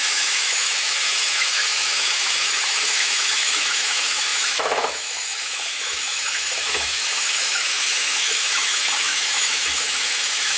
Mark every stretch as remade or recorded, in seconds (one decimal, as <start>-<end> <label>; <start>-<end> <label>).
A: 0.0-10.6 remade

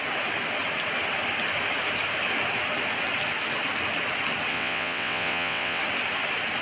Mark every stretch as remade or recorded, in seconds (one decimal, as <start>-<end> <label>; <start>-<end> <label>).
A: 0.0-4.5 recorded; 4.5-5.8 remade; 5.8-6.6 recorded

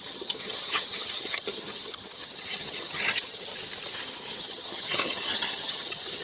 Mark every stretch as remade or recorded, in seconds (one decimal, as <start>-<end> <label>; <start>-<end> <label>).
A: 0.0-3.5 remade; 3.5-4.4 recorded; 4.4-6.2 remade

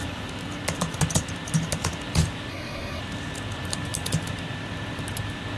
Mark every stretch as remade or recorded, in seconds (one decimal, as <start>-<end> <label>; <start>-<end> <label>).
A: 0.0-2.5 recorded; 2.5-3.0 remade; 3.0-5.6 recorded

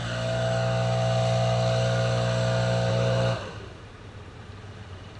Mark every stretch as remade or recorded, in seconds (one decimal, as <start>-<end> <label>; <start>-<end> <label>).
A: 0.0-2.9 recorded; 2.9-5.2 remade

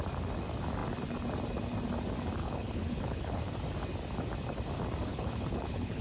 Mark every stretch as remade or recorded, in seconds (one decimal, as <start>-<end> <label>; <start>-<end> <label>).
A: 0.0-2.4 recorded; 2.4-3.4 remade; 3.4-5.1 recorded; 5.1-6.0 remade

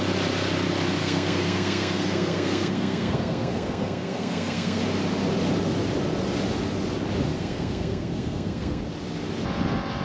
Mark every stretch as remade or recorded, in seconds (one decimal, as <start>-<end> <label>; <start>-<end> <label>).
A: 0.0-1.0 recorded; 1.0-4.8 remade; 4.8-7.3 recorded; 7.3-8.8 remade; 8.8-10.0 recorded

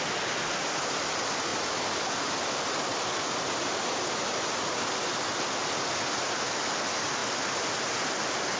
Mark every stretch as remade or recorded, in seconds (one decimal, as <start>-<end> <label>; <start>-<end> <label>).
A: 0.0-1.5 recorded; 1.5-2.6 remade; 2.6-8.6 recorded